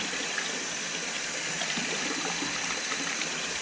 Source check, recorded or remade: remade